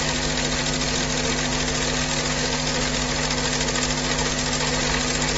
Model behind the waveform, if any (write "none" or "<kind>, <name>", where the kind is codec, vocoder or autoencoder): none